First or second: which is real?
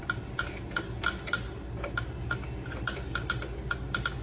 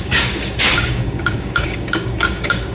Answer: first